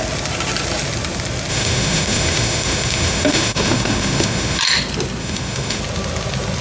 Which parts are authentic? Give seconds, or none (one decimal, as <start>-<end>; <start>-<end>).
0.0-1.5; 4.6-5.2; 5.8-6.6